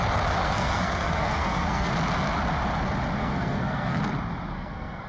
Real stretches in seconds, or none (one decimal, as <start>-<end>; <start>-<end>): 0.0-0.4; 1.9-3.2; 4.0-4.5